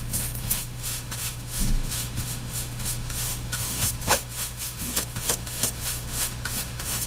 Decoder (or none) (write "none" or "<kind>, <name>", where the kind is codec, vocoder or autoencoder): autoencoder, DAC-VAE